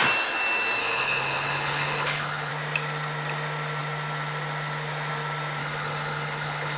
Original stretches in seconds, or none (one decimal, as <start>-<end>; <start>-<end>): 0.0-0.8; 2.5-5.6

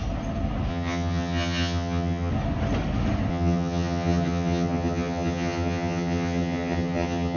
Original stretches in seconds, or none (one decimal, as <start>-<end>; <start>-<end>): 0.0-0.7; 2.3-3.3

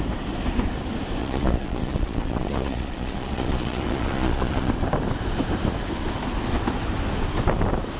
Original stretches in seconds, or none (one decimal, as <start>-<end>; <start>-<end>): 0.0-1.2; 4.7-8.0

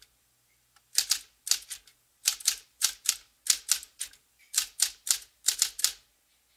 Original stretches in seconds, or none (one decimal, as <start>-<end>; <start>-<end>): 0.0-1.9; 3.1-3.8; 5.6-6.6

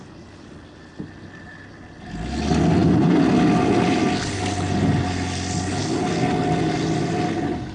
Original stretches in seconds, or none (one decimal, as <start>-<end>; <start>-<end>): 0.0-7.7

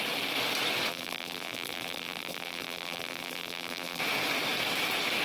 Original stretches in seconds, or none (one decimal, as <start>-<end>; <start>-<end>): 0.0-0.9; 4.0-5.2